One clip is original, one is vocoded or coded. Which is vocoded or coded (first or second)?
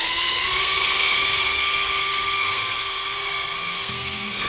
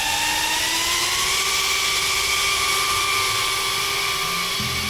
first